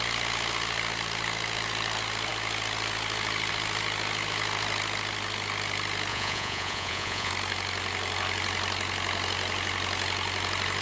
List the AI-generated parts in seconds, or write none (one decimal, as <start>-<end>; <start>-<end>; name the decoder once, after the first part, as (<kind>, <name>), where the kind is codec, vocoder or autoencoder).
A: 6.1-7.3 (vocoder, Vocos)